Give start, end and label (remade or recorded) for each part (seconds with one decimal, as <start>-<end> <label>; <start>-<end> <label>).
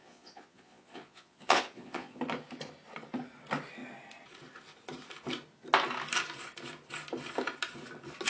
0.0-2.2 remade; 2.2-8.3 recorded